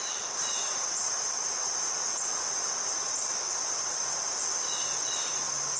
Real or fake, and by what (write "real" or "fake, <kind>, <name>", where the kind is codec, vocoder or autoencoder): real